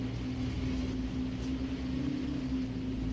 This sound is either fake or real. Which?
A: real